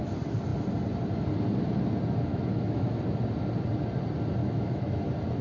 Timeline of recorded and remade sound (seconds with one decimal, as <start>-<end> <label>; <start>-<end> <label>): 0.0-2.3 recorded; 2.3-3.0 remade; 3.0-4.4 recorded; 4.4-5.0 remade; 5.0-5.4 recorded